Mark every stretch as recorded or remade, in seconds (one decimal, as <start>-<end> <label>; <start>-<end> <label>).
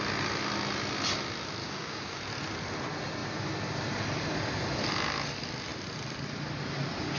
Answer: 0.0-1.6 recorded; 1.6-2.2 remade; 2.2-7.2 recorded